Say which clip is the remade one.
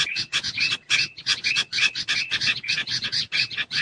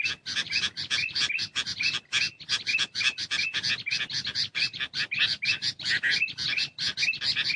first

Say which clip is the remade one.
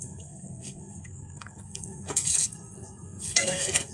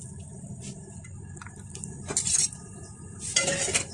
first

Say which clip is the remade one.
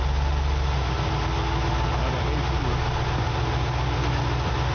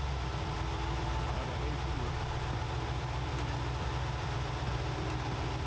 second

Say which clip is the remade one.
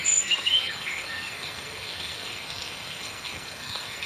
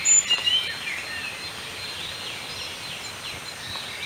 first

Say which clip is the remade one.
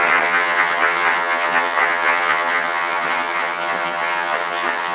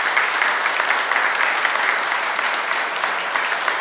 first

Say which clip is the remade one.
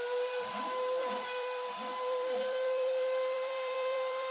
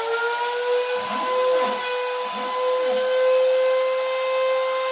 first